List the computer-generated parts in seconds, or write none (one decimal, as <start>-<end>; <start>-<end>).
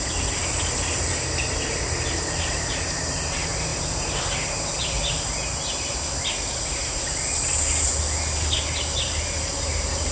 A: none